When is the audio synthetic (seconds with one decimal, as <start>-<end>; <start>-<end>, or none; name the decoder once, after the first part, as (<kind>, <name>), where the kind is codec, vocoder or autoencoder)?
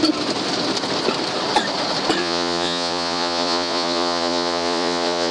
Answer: 2.2-5.3 (vocoder, Vocos)